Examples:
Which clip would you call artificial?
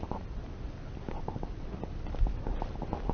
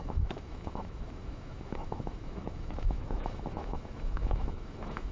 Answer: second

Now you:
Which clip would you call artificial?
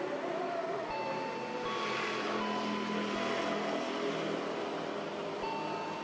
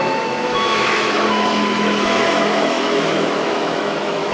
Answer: second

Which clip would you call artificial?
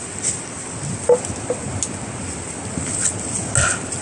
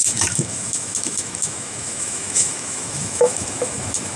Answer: second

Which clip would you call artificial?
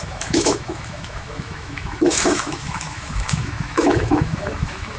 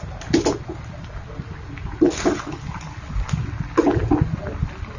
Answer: first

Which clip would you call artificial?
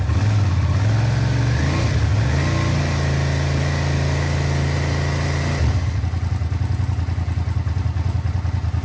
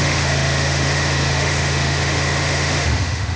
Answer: second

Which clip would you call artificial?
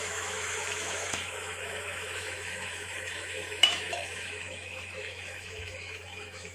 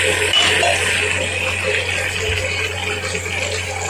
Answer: first